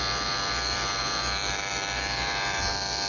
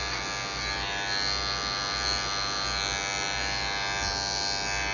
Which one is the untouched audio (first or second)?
second